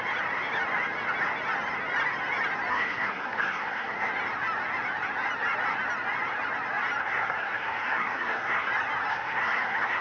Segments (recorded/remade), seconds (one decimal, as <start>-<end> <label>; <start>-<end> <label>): 0.0-2.7 recorded; 2.7-4.1 remade; 4.1-7.0 recorded; 7.0-8.7 remade; 8.7-9.1 recorded; 9.1-10.0 remade